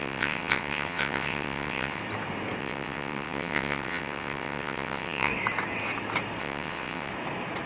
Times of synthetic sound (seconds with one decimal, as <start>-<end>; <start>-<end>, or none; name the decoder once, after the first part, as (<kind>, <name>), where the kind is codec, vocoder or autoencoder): 0.0-2.0 (vocoder, WaveNeXt); 2.6-5.3; 6.4-7.1